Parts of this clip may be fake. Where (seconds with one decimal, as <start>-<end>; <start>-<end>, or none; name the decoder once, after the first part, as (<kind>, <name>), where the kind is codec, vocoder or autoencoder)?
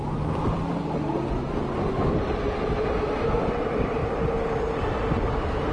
2.1-4.0 (vocoder, BigVGAN v2); 4.9-5.7